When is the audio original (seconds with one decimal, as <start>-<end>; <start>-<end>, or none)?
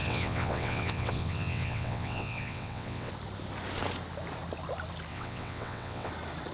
3.1-5.1; 6.1-6.5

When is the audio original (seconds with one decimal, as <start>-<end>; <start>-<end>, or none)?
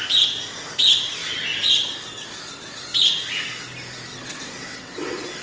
0.0-4.1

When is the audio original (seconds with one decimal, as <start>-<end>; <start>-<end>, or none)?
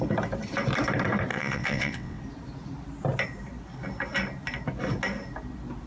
0.0-1.3; 2.2-5.9